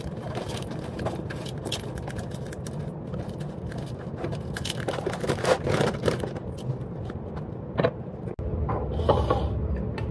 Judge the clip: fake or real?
real